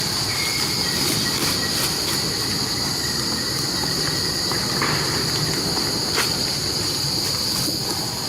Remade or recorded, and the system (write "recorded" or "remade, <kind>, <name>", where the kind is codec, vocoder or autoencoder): recorded